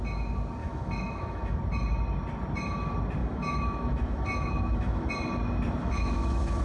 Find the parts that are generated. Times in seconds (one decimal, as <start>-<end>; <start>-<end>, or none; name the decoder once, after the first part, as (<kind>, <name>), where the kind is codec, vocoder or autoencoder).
0.6-1.6 (autoencoder, DAC-VAE); 3.2-5.1; 5.8-6.6

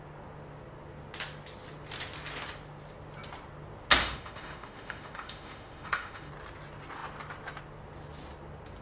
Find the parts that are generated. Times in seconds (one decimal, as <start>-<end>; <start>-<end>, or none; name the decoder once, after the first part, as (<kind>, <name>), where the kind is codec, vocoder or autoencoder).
4.0-6.3 (autoencoder, DAC-VAE)

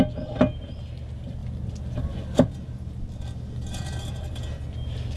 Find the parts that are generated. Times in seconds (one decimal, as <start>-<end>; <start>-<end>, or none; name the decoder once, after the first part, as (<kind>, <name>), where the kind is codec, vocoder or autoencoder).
none

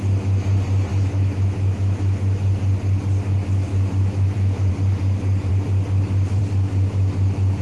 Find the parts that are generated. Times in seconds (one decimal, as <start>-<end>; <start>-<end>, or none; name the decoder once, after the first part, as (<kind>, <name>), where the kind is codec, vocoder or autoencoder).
0.9-2.4 (autoencoder, DAC-VAE); 3.7-4.7

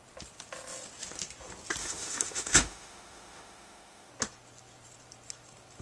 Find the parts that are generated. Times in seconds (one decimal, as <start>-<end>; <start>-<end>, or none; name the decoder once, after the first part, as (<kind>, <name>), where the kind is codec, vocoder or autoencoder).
1.8-4.1 (autoencoder, DAC-VAE)

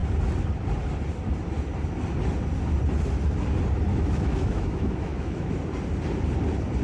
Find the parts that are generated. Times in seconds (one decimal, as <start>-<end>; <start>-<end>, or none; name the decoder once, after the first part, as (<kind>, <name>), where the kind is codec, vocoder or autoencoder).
3.9-5.5 (autoencoder, DAC-VAE)

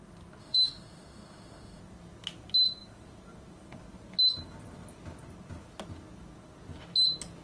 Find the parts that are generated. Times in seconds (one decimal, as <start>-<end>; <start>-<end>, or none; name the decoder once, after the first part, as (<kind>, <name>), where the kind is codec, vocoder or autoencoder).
0.4-1.8 (autoencoder, DAC-VAE)